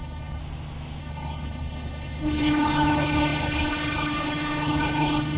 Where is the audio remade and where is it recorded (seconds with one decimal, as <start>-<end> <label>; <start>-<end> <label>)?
0.0-0.4 remade; 0.4-1.0 recorded; 1.0-5.4 remade